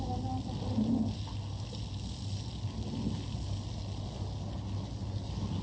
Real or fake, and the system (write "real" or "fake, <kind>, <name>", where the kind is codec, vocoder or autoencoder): real